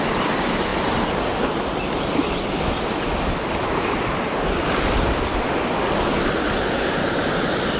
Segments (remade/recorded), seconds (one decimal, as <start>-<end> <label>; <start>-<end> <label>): 0.0-7.8 recorded